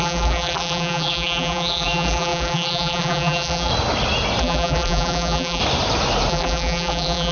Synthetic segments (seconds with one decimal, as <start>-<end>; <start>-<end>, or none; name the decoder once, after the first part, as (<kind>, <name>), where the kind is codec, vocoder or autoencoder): 0.0-3.7 (vocoder, BigVGAN v2); 4.4-5.6; 6.3-7.3